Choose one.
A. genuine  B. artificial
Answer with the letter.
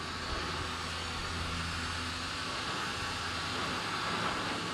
A